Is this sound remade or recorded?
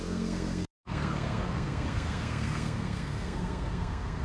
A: remade